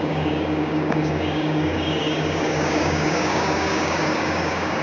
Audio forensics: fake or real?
fake